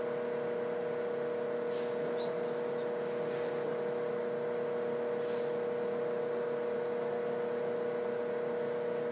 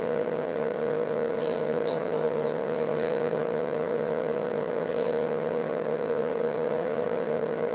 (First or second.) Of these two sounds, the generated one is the second